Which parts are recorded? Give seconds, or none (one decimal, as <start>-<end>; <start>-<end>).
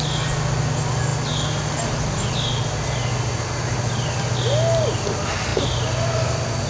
0.0-6.7